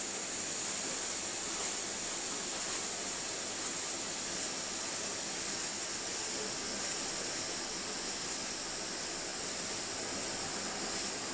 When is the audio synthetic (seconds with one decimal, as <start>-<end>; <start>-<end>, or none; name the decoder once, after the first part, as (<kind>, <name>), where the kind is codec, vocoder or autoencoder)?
none